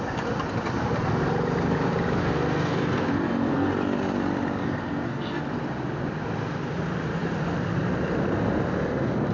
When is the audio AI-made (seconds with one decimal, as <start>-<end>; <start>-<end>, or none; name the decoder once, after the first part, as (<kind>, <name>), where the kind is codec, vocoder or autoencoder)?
2.2-3.7 (codec, SNAC); 4.6-5.4